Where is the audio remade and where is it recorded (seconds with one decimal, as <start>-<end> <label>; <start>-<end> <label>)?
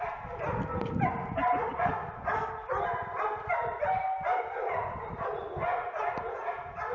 0.0-6.9 recorded